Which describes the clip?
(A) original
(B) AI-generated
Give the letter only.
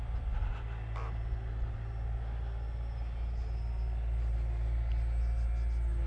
A